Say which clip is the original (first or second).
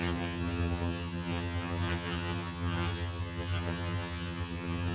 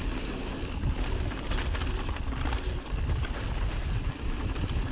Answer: second